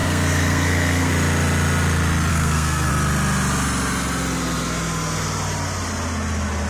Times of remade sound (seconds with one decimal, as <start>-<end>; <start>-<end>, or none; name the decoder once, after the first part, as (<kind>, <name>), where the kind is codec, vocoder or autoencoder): 0.0-1.1 (codec, SNAC); 2.3-2.9